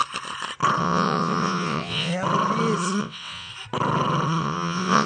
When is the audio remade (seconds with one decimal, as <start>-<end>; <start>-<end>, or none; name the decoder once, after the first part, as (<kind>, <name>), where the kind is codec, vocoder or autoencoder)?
0.8-2.1 (vocoder, WaveNeXt); 3.0-3.5; 4.4-5.1